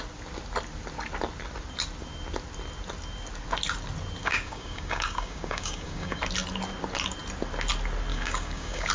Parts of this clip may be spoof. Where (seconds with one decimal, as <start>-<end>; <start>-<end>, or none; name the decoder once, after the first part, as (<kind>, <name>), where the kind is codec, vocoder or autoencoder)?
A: 4.2-6.2 (codec, DAC); 8.1-8.9